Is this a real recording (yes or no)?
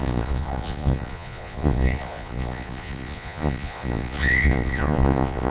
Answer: no